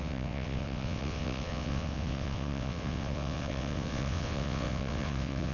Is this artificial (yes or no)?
yes